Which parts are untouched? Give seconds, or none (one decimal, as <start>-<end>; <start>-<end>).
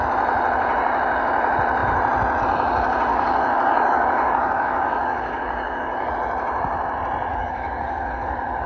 0.0-3.1; 6.1-7.3